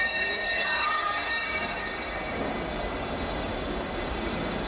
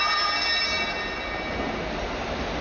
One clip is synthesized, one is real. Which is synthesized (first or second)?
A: first